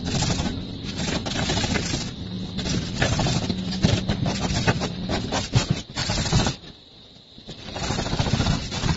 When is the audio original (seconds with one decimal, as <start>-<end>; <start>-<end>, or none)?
0.0-9.0